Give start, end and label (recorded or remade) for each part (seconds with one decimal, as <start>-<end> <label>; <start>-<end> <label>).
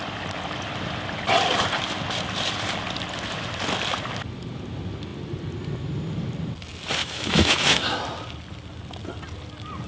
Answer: 0.0-7.0 recorded; 7.0-7.8 remade; 7.8-9.9 recorded